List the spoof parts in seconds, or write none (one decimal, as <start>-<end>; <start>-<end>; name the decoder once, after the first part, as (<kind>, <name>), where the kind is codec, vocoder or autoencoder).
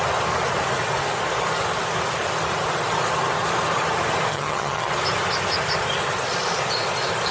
4.3-4.9 (vocoder, HiFi-GAN)